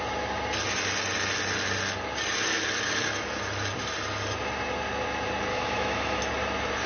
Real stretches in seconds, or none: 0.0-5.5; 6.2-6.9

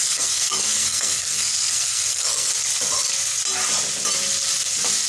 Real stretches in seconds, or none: 2.5-5.1

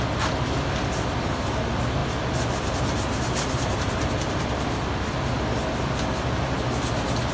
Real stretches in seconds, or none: 0.0-7.3

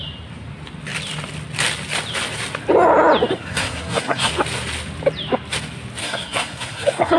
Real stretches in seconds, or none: 0.0-3.3; 4.3-6.0

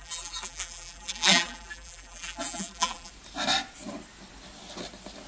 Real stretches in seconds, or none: 3.1-5.3

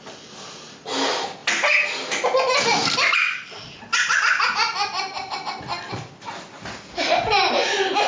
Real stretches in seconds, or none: 0.0-8.1